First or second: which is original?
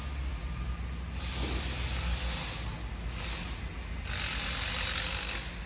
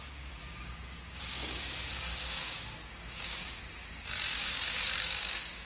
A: first